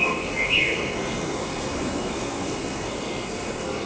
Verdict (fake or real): fake